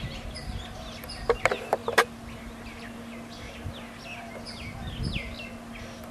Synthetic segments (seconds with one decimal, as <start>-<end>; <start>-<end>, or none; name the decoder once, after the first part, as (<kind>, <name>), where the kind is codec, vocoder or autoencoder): none